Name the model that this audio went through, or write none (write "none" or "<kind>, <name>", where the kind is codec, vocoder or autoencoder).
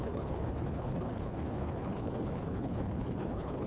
codec, HILCodec